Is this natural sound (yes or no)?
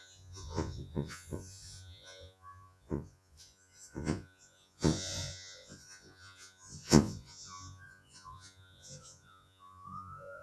no